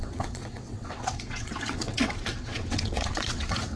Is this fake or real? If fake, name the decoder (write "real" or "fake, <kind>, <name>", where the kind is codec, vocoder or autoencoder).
fake, vocoder, WaveNeXt